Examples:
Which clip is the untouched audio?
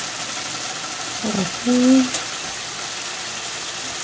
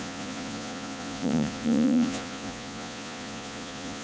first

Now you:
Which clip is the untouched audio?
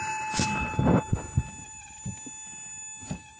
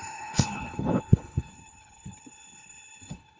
first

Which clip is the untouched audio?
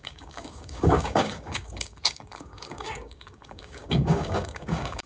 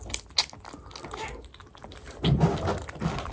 second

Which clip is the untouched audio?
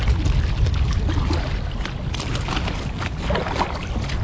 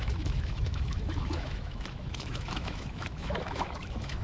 first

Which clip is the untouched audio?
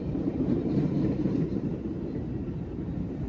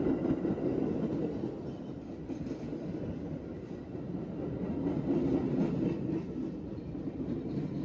second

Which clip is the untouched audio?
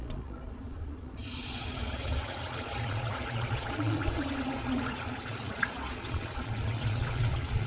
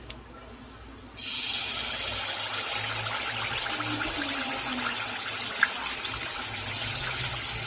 second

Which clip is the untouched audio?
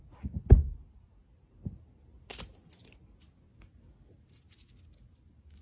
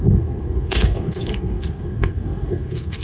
first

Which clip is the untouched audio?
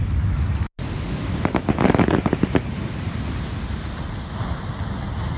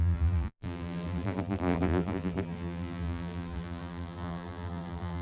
first